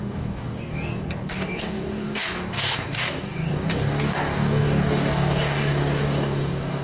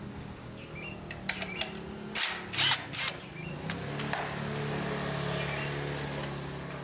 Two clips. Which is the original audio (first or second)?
second